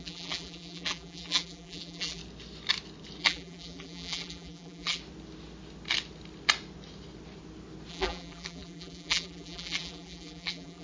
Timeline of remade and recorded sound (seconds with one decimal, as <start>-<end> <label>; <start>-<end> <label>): 0.0-2.2 remade; 2.2-3.2 recorded; 3.2-5.0 remade; 5.0-7.9 recorded; 7.9-10.8 remade